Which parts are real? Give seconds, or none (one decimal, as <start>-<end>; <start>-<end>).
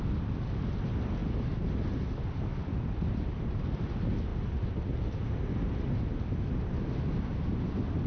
0.0-1.2; 1.7-2.5; 3.8-8.1